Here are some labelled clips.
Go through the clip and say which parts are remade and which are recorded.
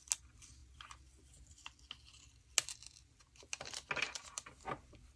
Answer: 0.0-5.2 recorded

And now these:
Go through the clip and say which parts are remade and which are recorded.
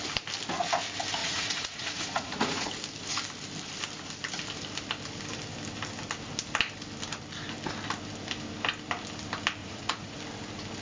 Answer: 0.0-1.2 recorded; 1.2-2.7 remade; 2.7-9.6 recorded; 9.6-10.2 remade; 10.2-10.8 recorded